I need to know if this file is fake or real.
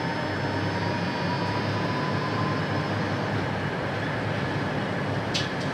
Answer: real